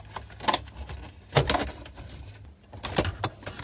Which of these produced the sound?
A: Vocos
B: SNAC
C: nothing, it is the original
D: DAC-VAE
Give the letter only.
C